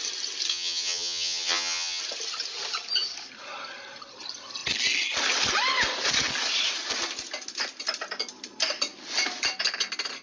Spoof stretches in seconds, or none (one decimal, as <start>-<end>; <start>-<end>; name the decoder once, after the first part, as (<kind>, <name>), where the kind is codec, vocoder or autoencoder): 0.5-2.0 (vocoder, HiFi-GAN)